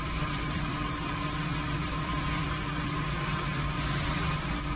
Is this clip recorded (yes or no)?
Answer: no